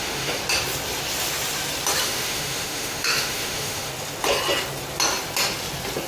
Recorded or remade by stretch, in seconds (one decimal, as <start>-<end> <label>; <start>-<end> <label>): 0.0-0.4 remade; 0.4-2.0 recorded; 2.0-3.9 remade; 3.9-6.1 recorded